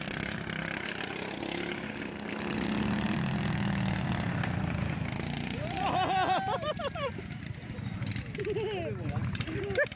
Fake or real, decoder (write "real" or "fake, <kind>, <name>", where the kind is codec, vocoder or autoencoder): real